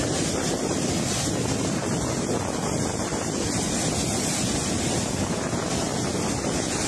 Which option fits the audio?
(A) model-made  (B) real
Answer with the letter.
B